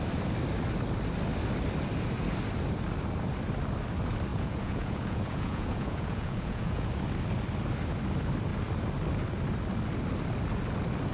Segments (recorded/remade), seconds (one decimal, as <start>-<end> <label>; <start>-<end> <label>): 0.0-4.3 recorded; 4.3-6.9 remade; 6.9-11.1 recorded